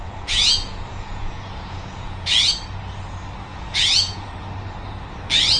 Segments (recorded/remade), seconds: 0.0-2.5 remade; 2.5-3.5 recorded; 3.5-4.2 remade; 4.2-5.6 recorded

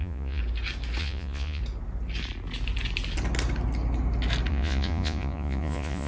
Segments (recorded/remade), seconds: 0.0-0.4 remade; 0.4-1.0 recorded; 1.0-1.6 remade; 1.6-4.5 recorded; 4.5-6.1 remade

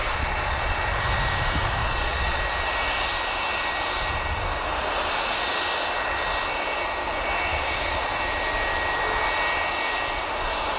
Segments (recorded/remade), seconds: 0.0-0.8 remade; 0.8-1.8 recorded; 1.8-2.4 remade; 2.4-7.5 recorded; 7.5-8.2 remade; 8.2-10.8 recorded